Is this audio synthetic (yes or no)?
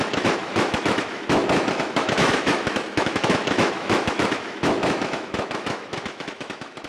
yes